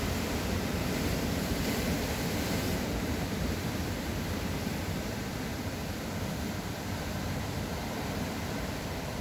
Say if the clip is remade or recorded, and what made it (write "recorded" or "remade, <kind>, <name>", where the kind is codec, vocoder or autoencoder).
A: remade, vocoder, BigVGAN v2